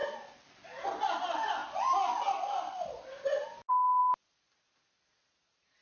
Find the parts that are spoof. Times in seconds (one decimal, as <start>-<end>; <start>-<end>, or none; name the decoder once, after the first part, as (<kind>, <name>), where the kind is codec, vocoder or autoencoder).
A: none